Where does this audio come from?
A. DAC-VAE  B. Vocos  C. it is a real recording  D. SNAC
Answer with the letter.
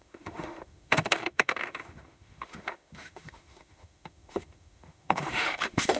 A